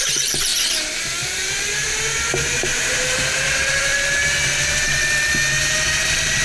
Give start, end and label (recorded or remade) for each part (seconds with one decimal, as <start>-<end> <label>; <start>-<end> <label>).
0.0-3.9 remade; 3.9-5.6 recorded; 5.6-6.4 remade